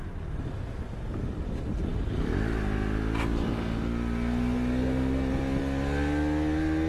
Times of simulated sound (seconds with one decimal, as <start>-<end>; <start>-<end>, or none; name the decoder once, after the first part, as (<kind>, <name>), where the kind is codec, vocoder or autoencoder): none